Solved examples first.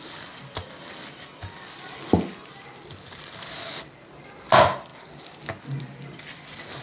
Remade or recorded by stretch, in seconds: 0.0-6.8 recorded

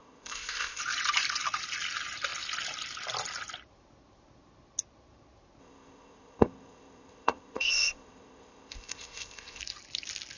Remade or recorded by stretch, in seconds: 0.0-0.8 remade; 0.8-5.6 recorded; 5.6-9.6 remade; 9.6-10.4 recorded

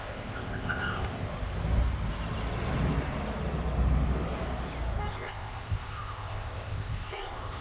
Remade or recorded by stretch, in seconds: 0.0-1.3 remade; 1.3-5.1 recorded; 5.1-7.6 remade

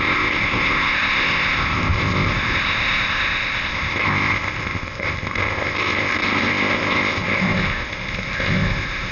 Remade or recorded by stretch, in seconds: 0.0-9.1 remade

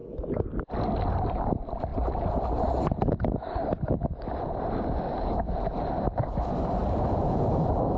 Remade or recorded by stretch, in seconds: 0.0-8.0 recorded

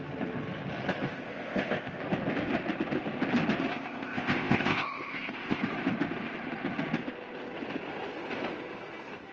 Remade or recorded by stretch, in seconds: 0.0-1.1 recorded; 1.1-2.0 remade; 2.0-3.7 recorded; 3.7-5.6 remade; 5.6-9.3 recorded

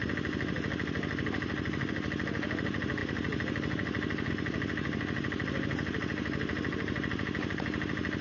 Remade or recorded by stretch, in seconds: 0.0-8.2 recorded